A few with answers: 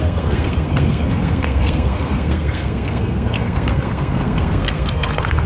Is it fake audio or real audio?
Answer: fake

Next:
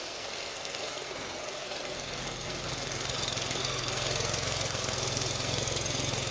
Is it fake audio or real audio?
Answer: fake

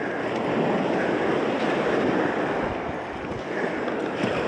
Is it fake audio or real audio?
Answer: real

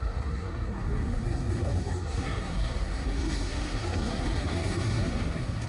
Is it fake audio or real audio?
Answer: fake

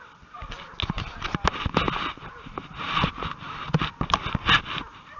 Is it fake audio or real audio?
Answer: real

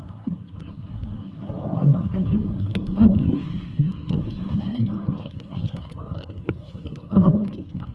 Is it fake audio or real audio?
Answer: fake